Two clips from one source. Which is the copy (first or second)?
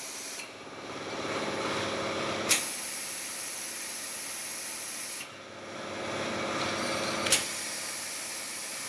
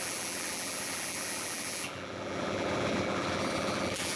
second